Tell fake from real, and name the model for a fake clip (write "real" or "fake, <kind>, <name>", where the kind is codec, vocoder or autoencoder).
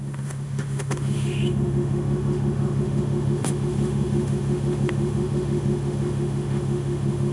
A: fake, autoencoder, DAC-VAE